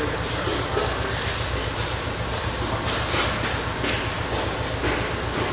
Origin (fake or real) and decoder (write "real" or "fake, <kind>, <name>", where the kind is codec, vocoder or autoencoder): real